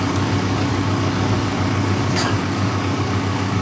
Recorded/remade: remade